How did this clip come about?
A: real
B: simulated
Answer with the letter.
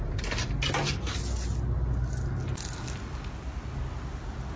A